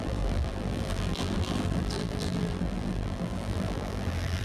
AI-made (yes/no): yes